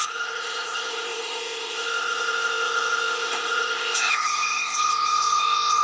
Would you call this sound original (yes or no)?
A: no